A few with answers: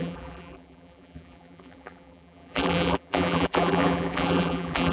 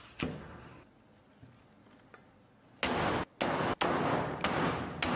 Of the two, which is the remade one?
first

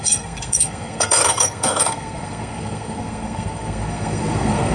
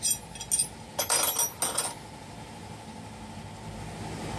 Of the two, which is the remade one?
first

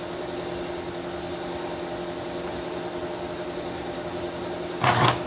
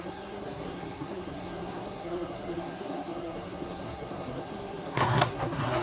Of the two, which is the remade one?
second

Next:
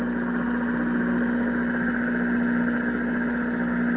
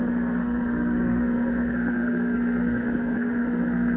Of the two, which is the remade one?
second